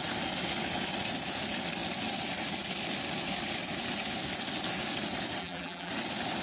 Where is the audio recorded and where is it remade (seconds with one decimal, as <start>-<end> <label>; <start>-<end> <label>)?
0.0-5.4 recorded; 5.4-5.9 remade; 5.9-6.4 recorded